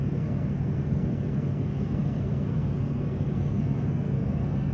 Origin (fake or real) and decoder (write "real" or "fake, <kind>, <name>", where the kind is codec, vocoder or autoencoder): fake, codec, SNAC